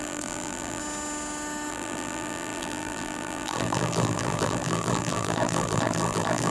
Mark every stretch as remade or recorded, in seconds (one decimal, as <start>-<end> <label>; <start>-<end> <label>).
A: 0.0-0.8 remade; 0.8-1.7 recorded; 1.7-6.5 remade